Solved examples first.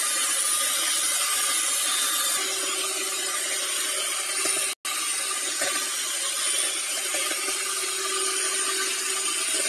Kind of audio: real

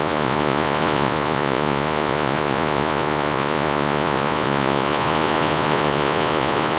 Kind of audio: fake